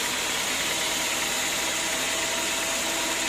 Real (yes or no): yes